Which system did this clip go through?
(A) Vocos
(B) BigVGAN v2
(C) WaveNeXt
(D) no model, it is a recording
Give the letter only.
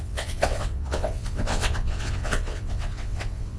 C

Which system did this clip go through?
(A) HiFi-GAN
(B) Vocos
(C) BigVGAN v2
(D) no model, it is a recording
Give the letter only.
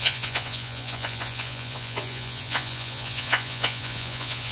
B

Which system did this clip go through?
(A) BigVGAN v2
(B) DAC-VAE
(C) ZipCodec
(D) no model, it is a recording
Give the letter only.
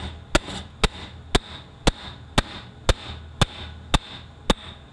D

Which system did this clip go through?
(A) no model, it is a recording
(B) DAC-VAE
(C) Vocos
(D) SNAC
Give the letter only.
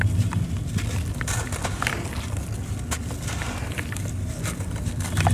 A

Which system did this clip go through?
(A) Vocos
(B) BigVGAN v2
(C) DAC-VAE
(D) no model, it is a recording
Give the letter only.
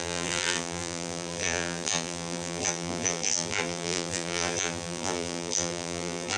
B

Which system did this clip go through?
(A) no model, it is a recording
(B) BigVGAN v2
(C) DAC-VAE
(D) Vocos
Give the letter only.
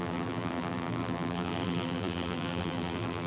B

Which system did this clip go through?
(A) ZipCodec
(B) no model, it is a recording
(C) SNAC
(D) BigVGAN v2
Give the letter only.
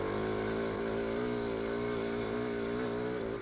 B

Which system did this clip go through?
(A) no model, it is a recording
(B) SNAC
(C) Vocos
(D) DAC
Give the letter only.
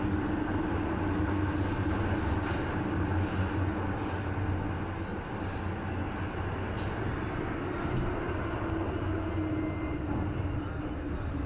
A